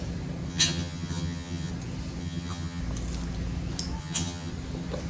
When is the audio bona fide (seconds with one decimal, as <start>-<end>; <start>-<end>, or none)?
0.0-0.5; 1.7-2.2; 2.8-4.0; 4.5-5.1